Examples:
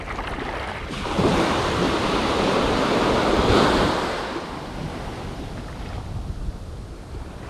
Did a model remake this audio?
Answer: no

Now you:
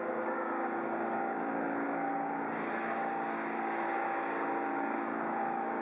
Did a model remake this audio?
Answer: yes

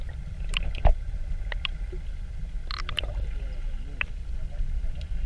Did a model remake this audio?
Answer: no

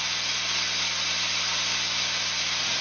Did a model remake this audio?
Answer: no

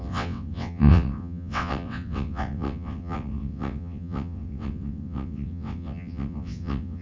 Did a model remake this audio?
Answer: yes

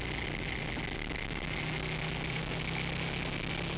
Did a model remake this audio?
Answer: no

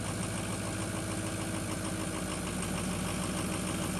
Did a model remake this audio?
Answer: no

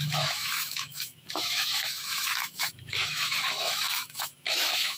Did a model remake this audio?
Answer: yes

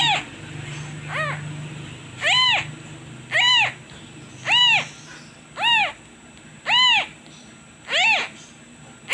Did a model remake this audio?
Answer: no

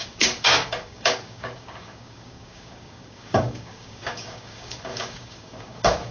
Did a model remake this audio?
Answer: yes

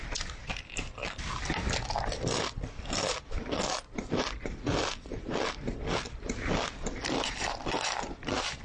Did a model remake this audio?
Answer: yes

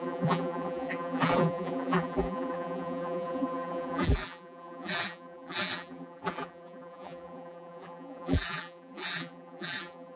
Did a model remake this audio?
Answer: yes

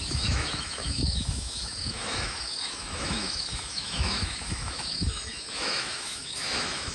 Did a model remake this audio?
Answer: yes